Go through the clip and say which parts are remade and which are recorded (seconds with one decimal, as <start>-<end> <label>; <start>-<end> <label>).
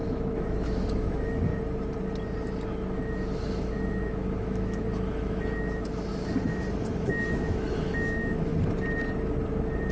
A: 0.0-1.5 remade; 1.5-2.9 recorded; 2.9-6.1 remade; 6.1-6.7 recorded; 6.7-8.5 remade; 8.5-9.9 recorded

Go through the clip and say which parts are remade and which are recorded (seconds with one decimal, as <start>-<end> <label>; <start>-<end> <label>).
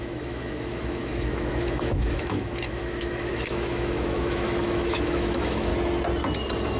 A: 0.0-5.7 remade; 5.7-6.8 recorded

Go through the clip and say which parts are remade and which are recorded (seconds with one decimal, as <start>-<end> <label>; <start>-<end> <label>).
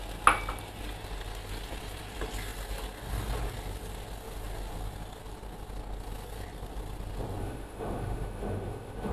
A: 0.0-7.4 recorded; 7.4-9.1 remade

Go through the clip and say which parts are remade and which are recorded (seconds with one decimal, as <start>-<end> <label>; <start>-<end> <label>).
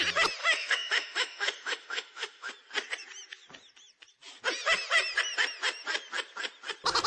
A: 0.0-0.4 recorded; 0.4-2.5 remade; 2.5-7.1 recorded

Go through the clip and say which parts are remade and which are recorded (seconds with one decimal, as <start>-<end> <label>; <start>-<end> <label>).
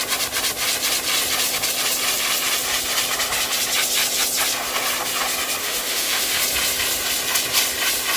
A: 0.0-5.6 recorded; 5.6-6.4 remade; 6.4-8.2 recorded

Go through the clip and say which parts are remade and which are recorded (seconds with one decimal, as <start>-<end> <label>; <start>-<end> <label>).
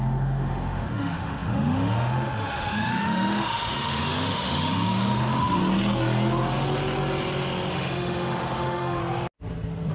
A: 0.0-5.6 remade; 5.6-7.7 recorded; 7.7-9.0 remade; 9.0-9.9 recorded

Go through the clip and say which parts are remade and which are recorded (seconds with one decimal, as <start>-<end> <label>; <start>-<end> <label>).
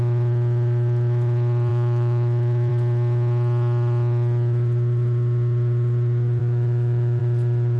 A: 0.0-1.7 recorded; 1.7-2.7 remade; 2.7-6.4 recorded; 6.4-7.2 remade; 7.2-7.8 recorded